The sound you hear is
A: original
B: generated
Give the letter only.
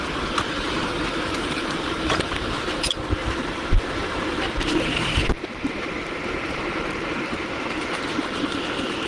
B